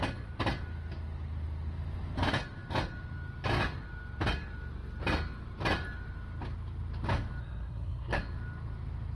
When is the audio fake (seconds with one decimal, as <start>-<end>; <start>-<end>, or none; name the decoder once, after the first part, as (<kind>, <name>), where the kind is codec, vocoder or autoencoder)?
7.4-8.2 (codec, SNAC)